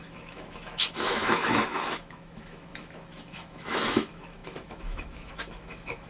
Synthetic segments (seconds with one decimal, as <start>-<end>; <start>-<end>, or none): 0.0-6.1